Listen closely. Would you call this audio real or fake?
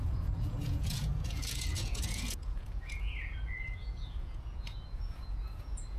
fake